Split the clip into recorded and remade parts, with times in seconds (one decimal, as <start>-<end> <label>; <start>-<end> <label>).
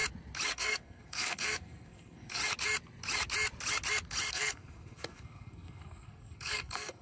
0.0-0.5 recorded; 0.5-2.4 remade; 2.4-4.3 recorded; 4.3-7.0 remade